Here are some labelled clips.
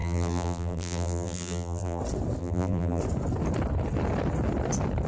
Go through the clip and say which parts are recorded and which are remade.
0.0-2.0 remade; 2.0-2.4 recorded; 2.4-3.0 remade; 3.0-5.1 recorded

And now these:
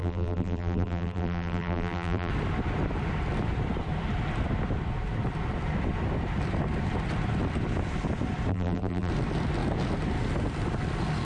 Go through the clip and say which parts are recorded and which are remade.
0.0-2.3 remade; 2.3-8.5 recorded; 8.5-9.1 remade; 9.1-11.2 recorded

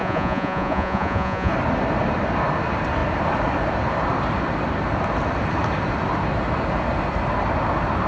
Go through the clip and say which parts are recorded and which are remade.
0.0-1.5 remade; 1.5-8.1 recorded

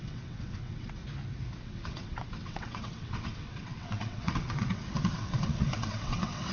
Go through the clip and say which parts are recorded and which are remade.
0.0-1.0 remade; 1.0-1.6 recorded; 1.6-6.5 remade

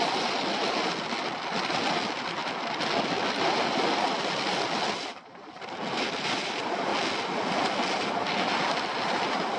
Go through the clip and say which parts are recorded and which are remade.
0.0-9.6 recorded